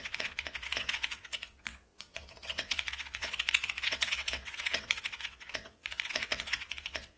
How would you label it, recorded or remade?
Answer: remade